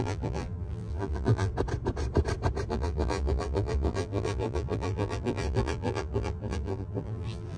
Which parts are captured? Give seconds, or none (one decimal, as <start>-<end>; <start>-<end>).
1.5-2.7